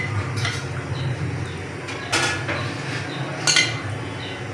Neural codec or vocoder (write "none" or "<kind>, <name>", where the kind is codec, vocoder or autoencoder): none